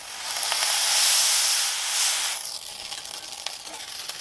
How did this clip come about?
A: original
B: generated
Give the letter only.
A